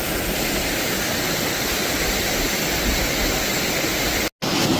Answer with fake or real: real